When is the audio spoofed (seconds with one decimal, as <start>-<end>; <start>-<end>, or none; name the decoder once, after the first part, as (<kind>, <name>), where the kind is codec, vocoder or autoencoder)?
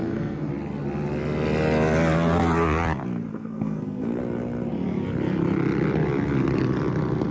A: 0.0-0.5 (codec, SNAC); 3.3-4.2